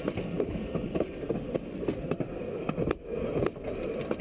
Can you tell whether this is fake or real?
real